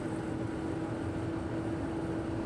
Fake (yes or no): no